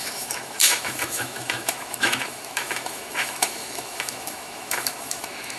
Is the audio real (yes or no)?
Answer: no